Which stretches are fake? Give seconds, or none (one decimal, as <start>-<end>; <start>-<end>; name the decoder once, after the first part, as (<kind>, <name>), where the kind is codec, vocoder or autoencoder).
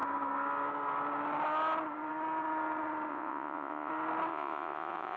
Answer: 3.1-3.9 (vocoder, Vocos); 4.3-5.2